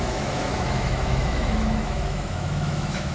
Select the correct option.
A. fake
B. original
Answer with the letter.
A